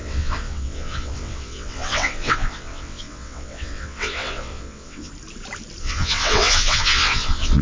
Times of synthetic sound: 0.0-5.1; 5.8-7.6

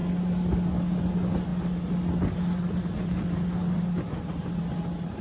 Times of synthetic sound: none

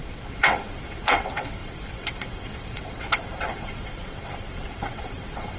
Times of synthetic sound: 0.0-5.6